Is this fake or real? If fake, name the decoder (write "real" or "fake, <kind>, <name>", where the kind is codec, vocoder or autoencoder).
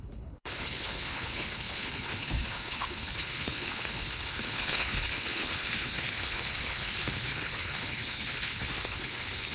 fake, codec, HILCodec